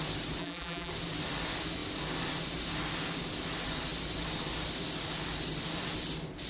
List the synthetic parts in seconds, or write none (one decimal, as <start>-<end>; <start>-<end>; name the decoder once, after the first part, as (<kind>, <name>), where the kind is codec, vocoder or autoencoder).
0.4-0.9 (vocoder, BigVGAN v2)